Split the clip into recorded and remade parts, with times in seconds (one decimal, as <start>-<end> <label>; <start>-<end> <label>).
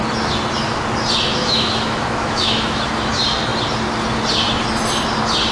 0.0-1.3 recorded; 1.3-3.1 remade; 3.1-5.5 recorded